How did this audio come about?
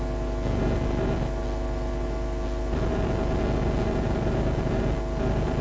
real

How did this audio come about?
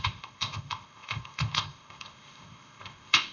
fake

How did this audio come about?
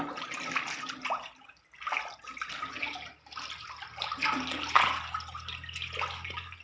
real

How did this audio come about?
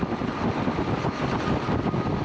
real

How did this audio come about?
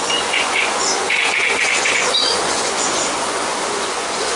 fake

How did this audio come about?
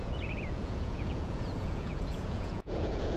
fake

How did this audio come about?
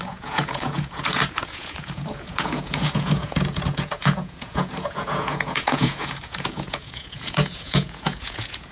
fake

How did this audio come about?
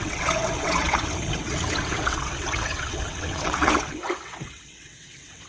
fake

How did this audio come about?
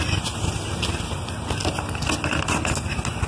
real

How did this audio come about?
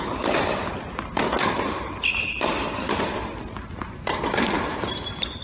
real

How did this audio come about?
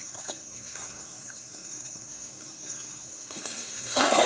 fake